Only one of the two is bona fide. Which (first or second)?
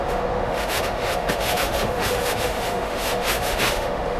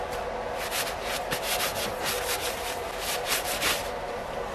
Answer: second